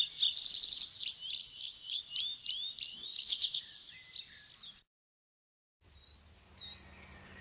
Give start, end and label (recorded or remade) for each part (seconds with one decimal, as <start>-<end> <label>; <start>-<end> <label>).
0.0-1.4 recorded; 1.4-2.0 remade; 2.0-2.9 recorded; 2.9-3.6 remade; 3.6-7.4 recorded